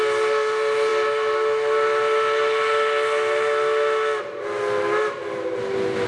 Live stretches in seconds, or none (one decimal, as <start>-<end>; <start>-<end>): 0.0-6.1